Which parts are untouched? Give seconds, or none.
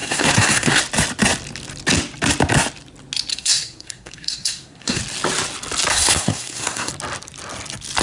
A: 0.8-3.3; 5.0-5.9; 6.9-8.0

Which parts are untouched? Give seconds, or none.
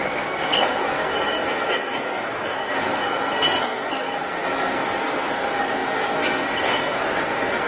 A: none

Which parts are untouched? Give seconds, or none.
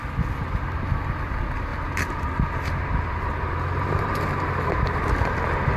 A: 0.0-5.8